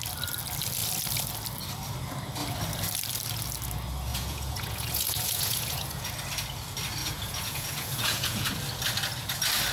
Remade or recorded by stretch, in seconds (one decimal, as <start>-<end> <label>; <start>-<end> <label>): 0.0-4.1 recorded; 4.1-6.1 remade; 6.1-7.0 recorded; 7.0-8.5 remade; 8.5-9.7 recorded